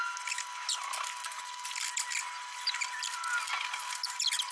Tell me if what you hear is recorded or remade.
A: recorded